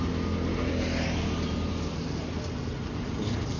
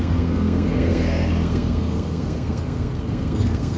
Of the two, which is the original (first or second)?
first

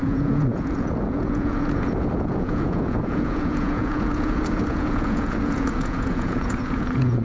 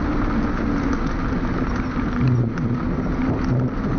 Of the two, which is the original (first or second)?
second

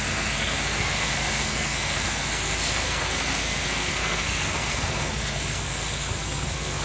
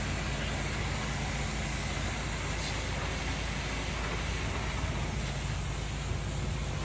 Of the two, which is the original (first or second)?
second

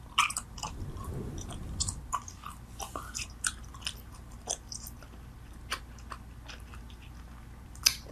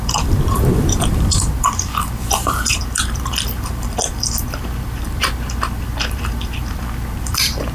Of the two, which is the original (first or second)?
first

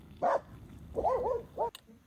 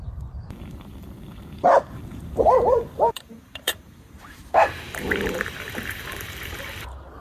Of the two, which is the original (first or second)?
first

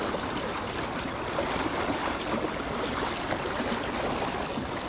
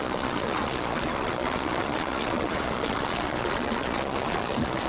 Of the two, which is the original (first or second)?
first